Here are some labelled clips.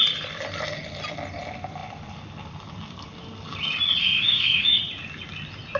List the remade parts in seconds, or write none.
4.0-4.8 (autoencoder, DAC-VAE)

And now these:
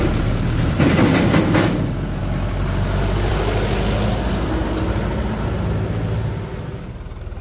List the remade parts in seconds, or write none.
none

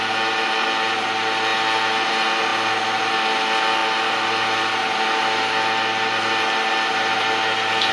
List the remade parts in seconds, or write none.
none

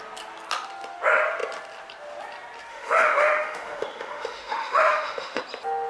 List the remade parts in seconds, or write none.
2.7-5.4 (autoencoder, DAC-VAE)

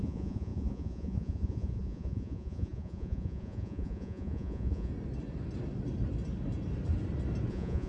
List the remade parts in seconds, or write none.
0.0-4.9 (vocoder, Vocos); 7.5-7.9

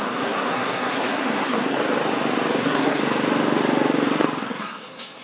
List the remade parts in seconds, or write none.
0.0-1.8 (codec, SNAC); 2.5-3.0; 4.4-5.2

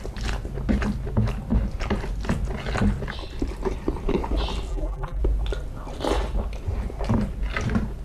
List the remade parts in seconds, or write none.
4.7-5.2 (vocoder, BigVGAN v2)